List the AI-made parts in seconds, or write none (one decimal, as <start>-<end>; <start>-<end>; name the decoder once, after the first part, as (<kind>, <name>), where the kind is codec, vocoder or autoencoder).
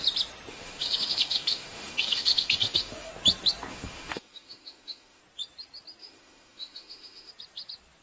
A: 0.5-3.1 (autoencoder, DAC-VAE); 3.7-5.2; 6.0-7.3